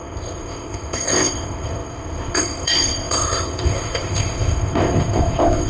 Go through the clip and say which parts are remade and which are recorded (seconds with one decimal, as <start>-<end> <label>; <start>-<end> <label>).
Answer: 0.0-5.7 remade